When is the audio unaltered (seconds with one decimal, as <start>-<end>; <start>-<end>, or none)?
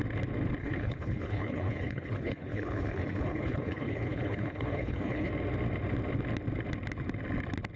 0.0-0.6; 5.3-7.8